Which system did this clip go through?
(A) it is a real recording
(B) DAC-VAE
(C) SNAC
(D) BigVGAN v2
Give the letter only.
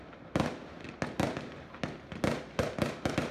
A